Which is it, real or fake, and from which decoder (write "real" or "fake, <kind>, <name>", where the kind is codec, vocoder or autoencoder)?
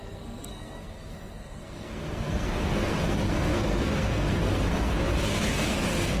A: fake, codec, SNAC